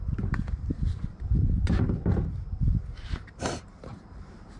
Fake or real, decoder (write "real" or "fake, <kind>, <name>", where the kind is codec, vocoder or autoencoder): fake, vocoder, BigVGAN v2